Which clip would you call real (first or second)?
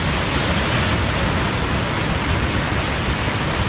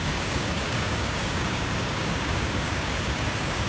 first